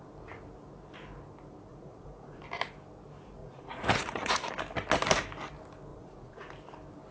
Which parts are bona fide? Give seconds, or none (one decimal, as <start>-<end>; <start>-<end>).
0.0-1.7; 2.4-3.4; 4.5-5.9; 6.5-7.1